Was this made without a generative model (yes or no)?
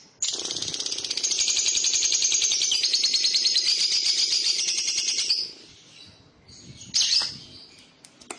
yes